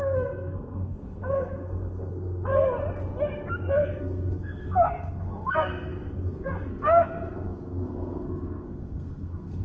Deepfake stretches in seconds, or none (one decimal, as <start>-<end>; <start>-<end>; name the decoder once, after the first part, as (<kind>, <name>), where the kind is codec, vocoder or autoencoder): 0.0-2.5 (codec, SNAC); 3.7-9.6